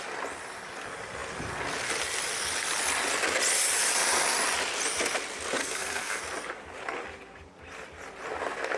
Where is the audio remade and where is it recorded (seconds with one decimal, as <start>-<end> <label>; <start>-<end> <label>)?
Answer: 0.0-5.6 recorded; 5.6-6.2 remade; 6.2-8.8 recorded